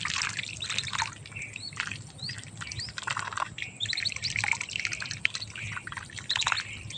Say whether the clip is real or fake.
fake